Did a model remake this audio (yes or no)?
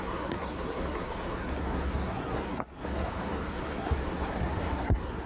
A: yes